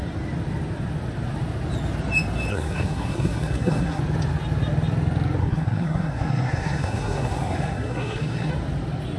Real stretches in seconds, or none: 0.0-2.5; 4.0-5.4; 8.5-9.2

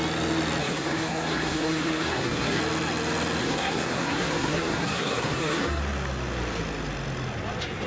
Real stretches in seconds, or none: 0.0-0.6; 2.6-3.4; 5.8-7.9